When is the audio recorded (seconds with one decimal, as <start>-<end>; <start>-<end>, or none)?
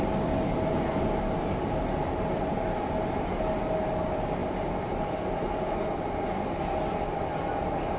0.0-8.0